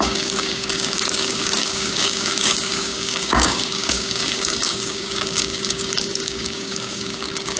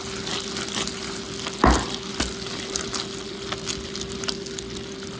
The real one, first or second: second